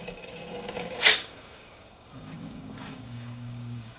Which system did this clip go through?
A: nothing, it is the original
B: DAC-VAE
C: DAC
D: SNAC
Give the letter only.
C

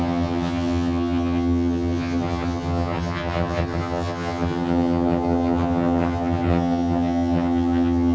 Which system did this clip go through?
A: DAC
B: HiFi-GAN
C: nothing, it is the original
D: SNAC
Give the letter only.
B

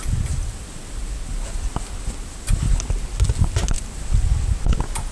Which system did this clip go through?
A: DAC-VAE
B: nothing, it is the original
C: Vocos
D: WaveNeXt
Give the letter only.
B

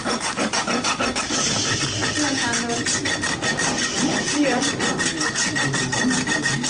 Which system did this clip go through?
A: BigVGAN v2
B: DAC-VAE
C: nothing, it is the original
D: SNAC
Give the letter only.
C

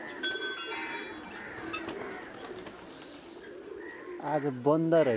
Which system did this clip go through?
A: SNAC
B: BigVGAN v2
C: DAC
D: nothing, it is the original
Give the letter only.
D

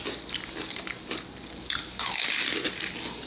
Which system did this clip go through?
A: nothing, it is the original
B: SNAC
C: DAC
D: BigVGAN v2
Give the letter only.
A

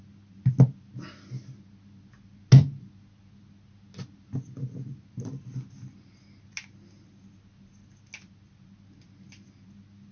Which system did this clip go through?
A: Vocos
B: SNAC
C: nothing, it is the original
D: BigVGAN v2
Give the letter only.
C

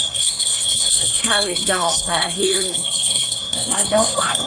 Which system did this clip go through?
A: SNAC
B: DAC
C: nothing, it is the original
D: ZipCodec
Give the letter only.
A